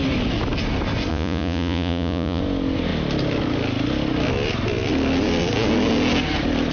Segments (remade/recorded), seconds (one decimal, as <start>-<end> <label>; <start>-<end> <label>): 0.0-1.1 recorded; 1.1-2.4 remade; 2.4-6.7 recorded